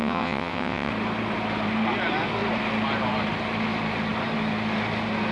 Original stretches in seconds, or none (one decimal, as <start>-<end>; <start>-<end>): 0.9-5.3